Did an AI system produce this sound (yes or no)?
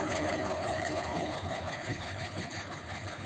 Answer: yes